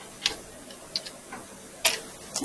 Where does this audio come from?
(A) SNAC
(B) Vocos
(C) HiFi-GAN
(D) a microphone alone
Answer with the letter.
D